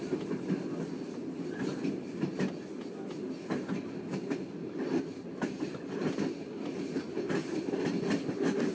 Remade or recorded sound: recorded